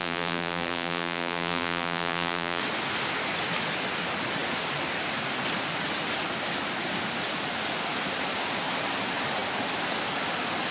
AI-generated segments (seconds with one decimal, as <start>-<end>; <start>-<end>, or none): 0.0-2.6

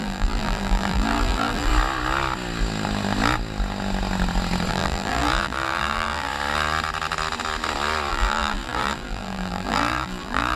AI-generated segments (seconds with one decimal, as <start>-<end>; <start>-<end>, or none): 0.0-1.7; 4.7-6.3; 8.1-10.6

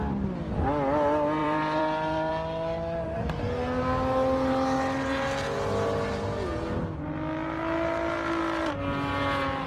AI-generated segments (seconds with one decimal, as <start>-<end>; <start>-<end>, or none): 1.4-2.3

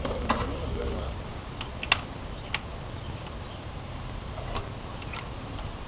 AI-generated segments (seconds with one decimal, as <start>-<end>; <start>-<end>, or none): 0.0-1.3; 3.5-4.6; 5.2-5.9